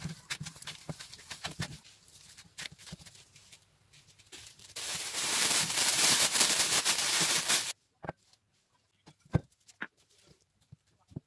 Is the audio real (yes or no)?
no